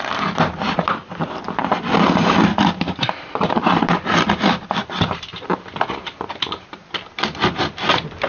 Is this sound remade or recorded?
remade